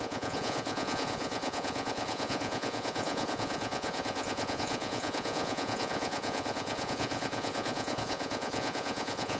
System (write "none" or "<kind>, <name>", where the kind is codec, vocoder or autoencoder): vocoder, Vocos